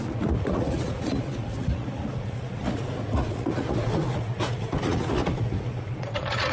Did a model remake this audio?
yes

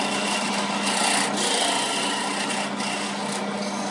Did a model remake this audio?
no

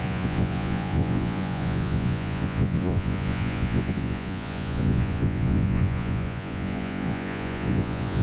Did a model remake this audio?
yes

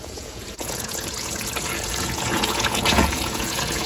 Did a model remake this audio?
yes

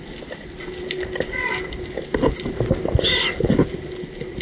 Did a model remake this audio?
no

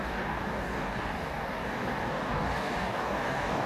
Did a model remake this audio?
yes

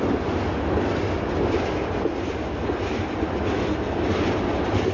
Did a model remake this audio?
no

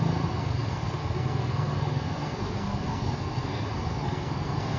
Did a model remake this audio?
yes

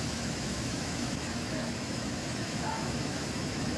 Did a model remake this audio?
yes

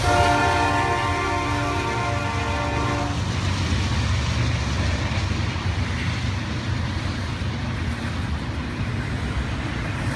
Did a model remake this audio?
no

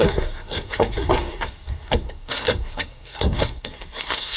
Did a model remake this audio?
yes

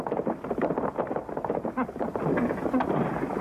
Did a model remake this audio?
no